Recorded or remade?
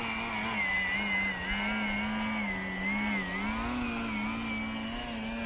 recorded